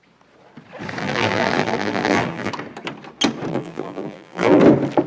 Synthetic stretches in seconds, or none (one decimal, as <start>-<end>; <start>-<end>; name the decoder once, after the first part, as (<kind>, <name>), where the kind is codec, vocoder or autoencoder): 1.0-2.5 (vocoder, BigVGAN v2); 3.5-4.6